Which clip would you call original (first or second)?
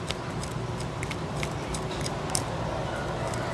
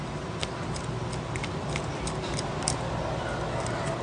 second